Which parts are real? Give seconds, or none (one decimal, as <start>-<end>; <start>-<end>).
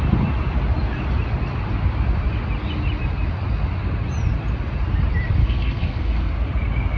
0.0-5.4; 6.3-7.0